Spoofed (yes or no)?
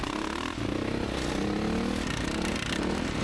no